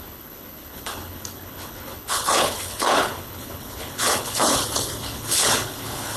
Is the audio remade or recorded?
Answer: remade